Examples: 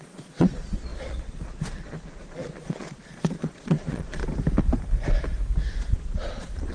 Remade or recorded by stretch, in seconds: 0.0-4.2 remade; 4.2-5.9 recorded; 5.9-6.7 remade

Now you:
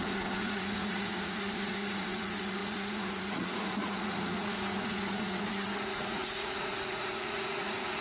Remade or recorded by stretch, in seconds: 0.0-8.0 remade

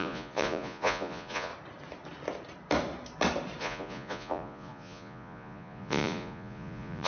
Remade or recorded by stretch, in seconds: 0.0-1.5 remade; 1.5-3.6 recorded; 3.6-7.1 remade

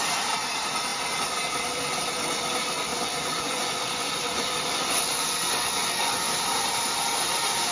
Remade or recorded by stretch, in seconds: 0.0-2.9 recorded; 2.9-6.3 remade; 6.3-7.7 recorded

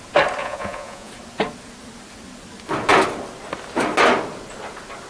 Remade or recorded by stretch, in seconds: 0.0-0.4 recorded; 0.4-1.1 remade; 1.1-5.1 recorded

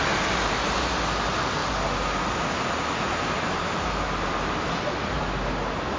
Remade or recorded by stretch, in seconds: 0.0-6.0 recorded

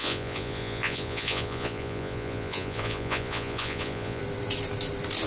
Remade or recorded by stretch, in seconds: 0.0-4.2 remade; 4.2-5.3 recorded